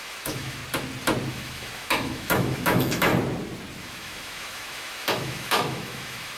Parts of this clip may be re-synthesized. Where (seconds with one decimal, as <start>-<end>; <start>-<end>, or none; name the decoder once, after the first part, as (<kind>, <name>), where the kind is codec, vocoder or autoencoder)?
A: 0.0-0.6 (autoencoder, DAC-VAE); 1.3-3.1; 3.8-6.4